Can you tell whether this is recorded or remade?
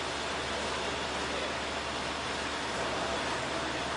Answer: recorded